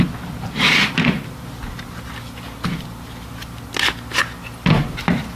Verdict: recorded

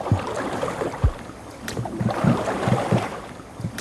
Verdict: remade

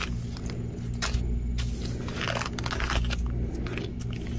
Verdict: recorded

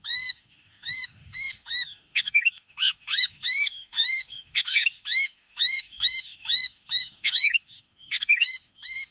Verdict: remade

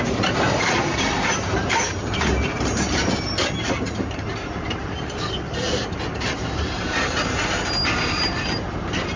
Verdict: remade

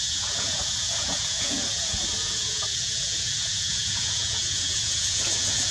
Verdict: remade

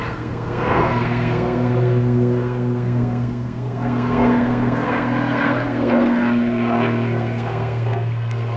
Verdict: remade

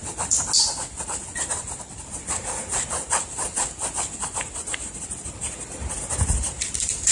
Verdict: recorded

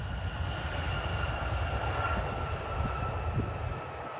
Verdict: recorded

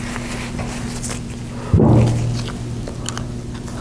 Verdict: recorded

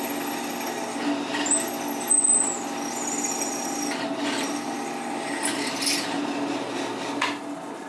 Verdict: recorded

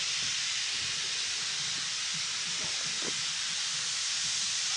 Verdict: recorded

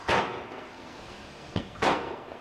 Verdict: remade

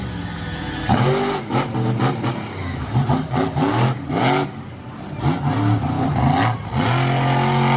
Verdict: recorded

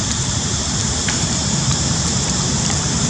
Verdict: remade